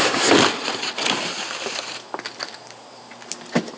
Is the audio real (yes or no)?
yes